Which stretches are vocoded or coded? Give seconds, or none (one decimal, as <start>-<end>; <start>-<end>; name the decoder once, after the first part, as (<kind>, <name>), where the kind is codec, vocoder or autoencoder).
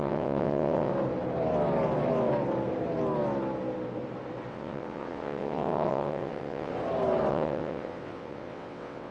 0.0-0.9 (vocoder, WaveNeXt); 4.5-6.7; 7.3-9.1